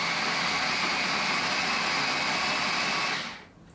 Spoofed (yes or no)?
no